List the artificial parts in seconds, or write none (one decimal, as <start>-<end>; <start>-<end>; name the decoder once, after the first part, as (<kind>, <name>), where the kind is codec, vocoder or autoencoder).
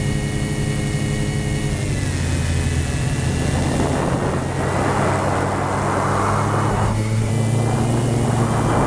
6.7-7.3 (codec, SNAC)